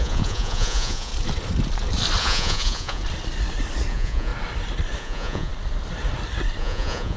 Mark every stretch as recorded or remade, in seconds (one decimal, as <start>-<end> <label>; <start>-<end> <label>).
0.0-1.1 remade; 1.1-2.2 recorded; 2.2-3.0 remade; 3.0-3.9 recorded; 3.9-4.3 remade; 4.3-5.0 recorded; 5.0-5.5 remade; 5.5-6.6 recorded; 6.6-7.2 remade